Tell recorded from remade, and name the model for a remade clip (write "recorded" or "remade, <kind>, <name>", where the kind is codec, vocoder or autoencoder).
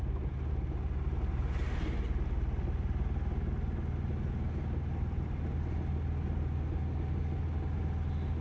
recorded